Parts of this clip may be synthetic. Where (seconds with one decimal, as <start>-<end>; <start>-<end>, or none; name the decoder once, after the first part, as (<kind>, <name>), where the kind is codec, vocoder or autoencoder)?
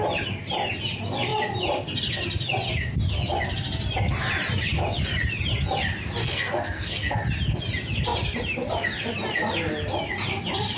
6.2-7.1 (codec, SNAC)